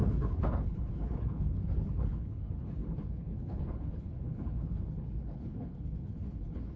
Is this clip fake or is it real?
fake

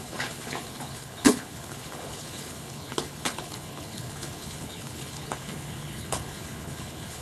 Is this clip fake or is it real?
fake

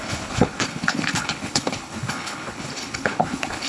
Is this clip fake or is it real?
fake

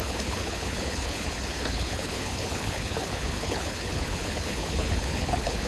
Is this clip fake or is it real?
fake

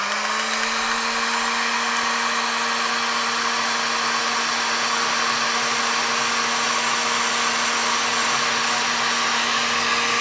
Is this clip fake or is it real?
real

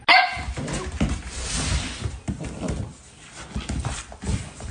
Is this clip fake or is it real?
real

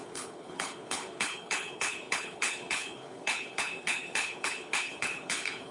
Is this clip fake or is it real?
fake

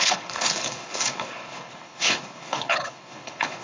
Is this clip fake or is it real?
fake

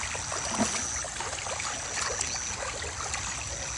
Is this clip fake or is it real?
real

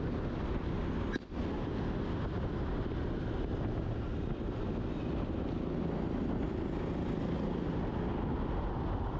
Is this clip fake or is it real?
real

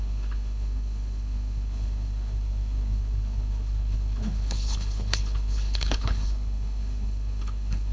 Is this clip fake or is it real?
fake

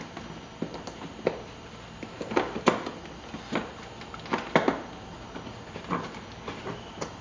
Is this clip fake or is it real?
real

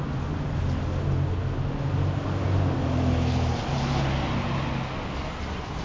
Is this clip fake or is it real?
real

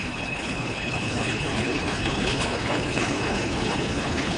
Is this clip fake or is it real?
fake